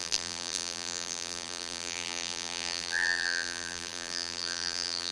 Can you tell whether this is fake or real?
fake